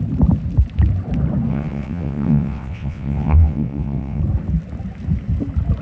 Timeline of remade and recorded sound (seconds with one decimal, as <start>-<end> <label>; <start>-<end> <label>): 0.0-1.5 recorded; 1.5-4.2 remade; 4.2-5.8 recorded